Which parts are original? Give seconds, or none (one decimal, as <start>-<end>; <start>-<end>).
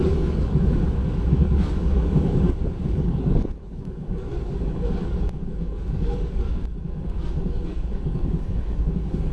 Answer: none